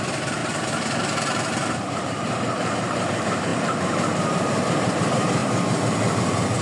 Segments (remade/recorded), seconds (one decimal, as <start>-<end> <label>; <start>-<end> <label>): 0.0-5.4 remade; 5.4-6.6 recorded